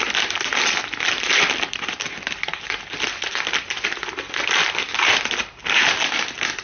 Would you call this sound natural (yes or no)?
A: yes